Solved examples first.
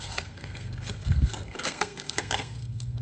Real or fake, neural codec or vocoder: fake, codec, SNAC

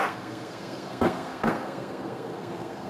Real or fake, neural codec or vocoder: fake, codec, SNAC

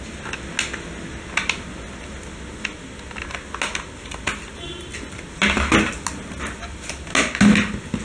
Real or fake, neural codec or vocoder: real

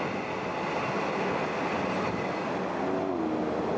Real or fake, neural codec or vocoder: real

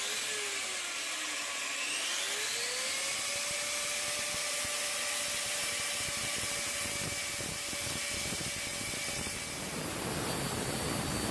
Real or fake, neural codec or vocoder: real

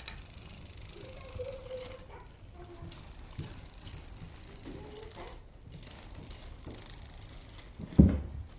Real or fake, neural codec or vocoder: real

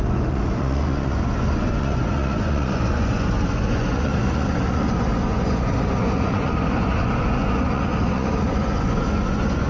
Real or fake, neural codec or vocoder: fake, vocoder, Vocos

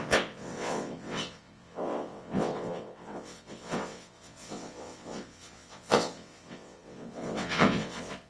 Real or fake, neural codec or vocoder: fake, vocoder, WaveNeXt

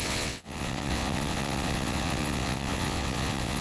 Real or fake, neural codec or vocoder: fake, vocoder, WaveNeXt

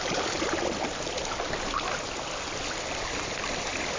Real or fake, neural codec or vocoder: real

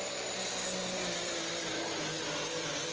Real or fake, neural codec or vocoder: real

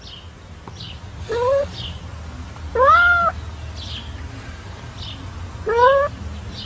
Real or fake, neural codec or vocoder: real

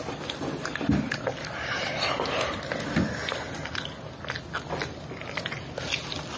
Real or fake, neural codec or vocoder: real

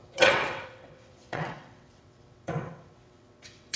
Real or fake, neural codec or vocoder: fake, vocoder, WaveNeXt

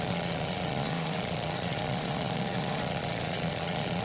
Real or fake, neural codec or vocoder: fake, vocoder, Vocos